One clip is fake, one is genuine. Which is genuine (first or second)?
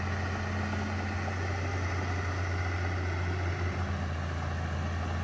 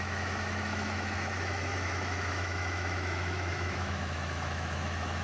first